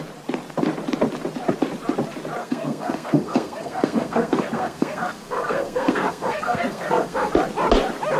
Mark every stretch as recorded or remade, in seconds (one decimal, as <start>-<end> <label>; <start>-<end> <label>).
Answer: 0.0-2.4 recorded; 2.4-7.3 remade; 7.3-8.2 recorded